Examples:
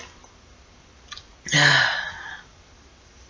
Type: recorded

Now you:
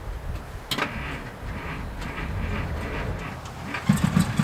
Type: recorded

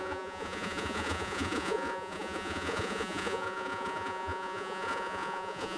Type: remade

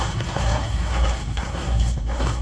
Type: remade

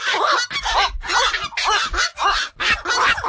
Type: recorded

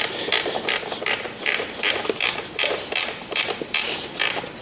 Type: remade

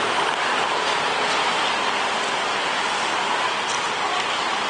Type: recorded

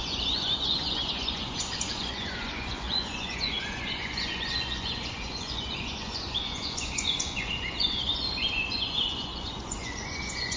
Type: remade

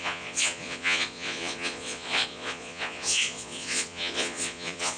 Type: remade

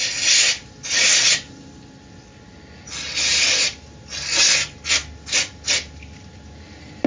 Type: recorded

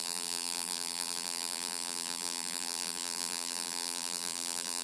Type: remade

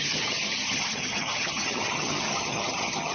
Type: remade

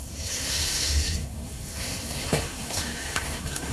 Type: remade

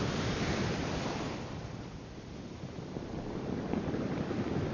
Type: remade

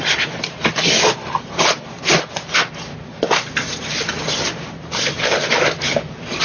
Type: recorded